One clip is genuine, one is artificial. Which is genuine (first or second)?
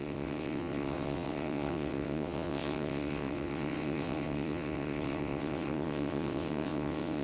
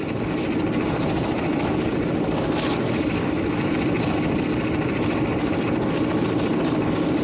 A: second